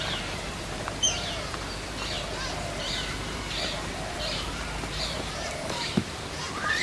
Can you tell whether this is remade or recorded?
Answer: remade